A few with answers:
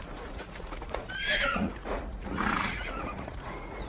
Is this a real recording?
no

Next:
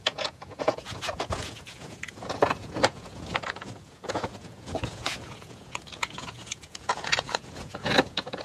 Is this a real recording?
no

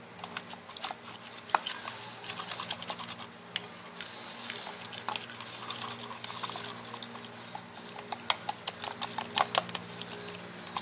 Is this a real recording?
yes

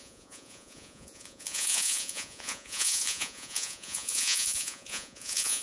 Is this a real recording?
no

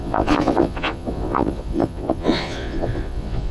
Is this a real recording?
no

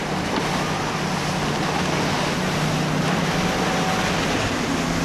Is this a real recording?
yes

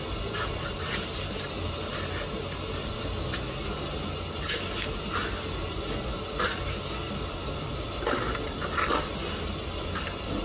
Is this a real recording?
yes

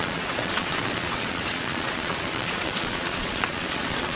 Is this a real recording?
no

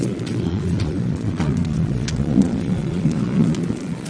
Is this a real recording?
no